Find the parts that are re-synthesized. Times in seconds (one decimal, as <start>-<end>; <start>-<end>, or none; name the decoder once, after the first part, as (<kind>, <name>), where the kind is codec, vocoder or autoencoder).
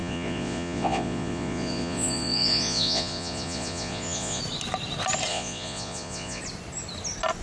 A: 0.0-4.4 (vocoder, Vocos); 5.3-6.4